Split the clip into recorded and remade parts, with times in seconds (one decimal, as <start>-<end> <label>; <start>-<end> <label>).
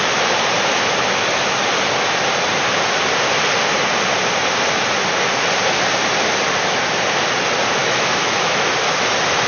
0.0-7.8 recorded; 7.8-8.7 remade; 8.7-9.5 recorded